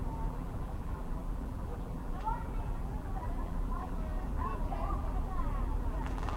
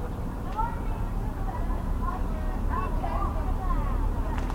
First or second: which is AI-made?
first